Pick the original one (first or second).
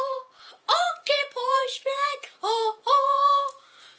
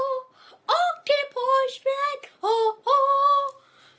second